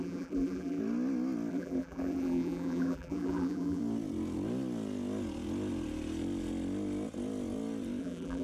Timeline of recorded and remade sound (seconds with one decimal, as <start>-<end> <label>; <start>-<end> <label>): 0.0-0.8 remade; 0.8-1.5 recorded; 1.5-3.8 remade; 3.8-8.0 recorded; 8.0-8.4 remade